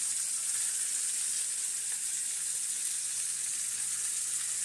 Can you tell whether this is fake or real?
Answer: real